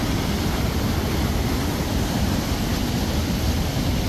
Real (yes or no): yes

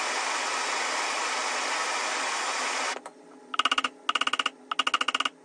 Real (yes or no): yes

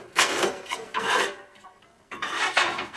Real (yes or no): no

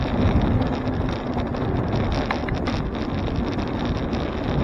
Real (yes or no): yes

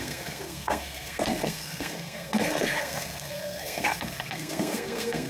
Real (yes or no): no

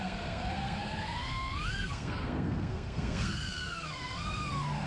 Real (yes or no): no